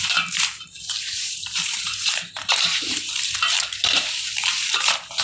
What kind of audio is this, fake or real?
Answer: fake